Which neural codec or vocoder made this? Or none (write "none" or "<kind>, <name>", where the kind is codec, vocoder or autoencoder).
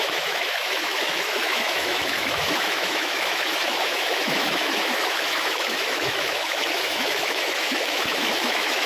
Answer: autoencoder, DAC-VAE